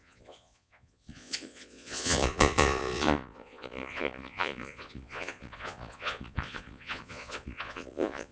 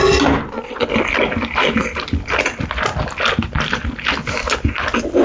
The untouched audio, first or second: second